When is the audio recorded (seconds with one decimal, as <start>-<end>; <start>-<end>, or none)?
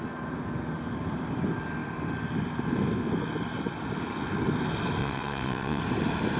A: 0.0-5.0; 5.8-6.4